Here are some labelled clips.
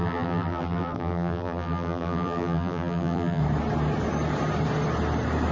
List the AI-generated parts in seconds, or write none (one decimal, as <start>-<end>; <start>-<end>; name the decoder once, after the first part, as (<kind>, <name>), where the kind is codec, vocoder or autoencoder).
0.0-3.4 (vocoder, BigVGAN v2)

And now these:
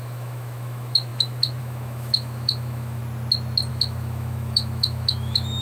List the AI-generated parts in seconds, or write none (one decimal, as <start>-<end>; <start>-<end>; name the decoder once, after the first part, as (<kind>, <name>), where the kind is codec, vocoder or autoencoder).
0.0-3.0 (autoencoder, DAC-VAE); 3.7-5.6

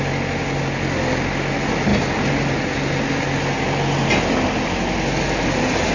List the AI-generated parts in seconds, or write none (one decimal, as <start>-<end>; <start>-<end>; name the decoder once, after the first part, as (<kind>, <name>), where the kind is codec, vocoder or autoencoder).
none

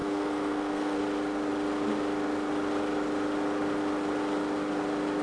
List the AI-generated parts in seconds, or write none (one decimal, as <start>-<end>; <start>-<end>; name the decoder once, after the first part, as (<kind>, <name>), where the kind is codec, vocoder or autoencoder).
0.0-1.0 (codec, SNAC)

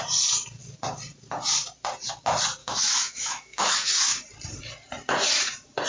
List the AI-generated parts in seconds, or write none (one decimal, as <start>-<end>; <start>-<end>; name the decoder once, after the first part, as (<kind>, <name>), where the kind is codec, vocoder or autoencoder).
2.6-3.9 (autoencoder, DAC-VAE)

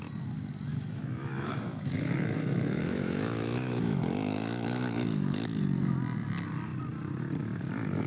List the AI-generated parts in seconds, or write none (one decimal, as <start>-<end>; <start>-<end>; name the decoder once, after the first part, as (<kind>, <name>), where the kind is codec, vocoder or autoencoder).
0.7-5.6 (autoencoder, DAC-VAE)

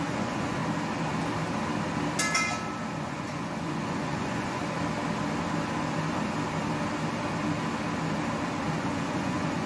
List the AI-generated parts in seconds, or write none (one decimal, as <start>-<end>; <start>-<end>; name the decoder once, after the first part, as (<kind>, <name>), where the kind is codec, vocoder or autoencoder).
0.0-0.6 (vocoder, Vocos); 3.0-4.6; 8.8-9.7